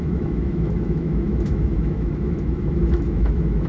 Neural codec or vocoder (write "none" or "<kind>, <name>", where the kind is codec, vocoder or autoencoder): autoencoder, DAC-VAE